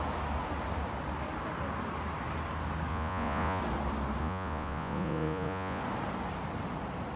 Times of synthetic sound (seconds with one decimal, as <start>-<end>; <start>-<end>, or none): 2.9-3.6; 4.2-5.8